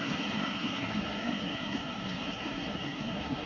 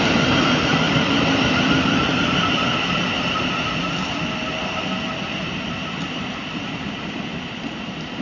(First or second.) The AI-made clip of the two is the first